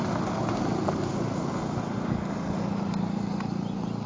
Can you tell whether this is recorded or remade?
recorded